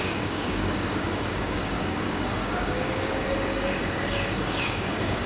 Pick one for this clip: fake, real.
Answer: fake